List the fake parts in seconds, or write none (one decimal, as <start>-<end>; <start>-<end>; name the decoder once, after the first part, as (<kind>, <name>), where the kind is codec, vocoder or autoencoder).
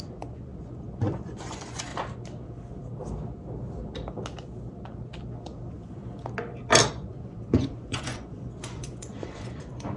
0.0-1.9 (vocoder, Vocos); 5.4-6.0; 6.9-10.0